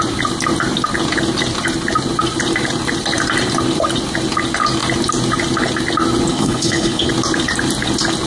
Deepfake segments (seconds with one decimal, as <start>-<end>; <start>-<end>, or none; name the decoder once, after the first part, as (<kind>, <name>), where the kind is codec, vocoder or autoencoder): 6.3-7.1 (codec, HILCodec)

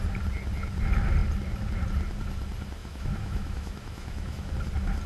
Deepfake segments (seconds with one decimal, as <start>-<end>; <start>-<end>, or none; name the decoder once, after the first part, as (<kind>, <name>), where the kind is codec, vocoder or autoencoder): 2.8-4.5 (autoencoder, DAC-VAE)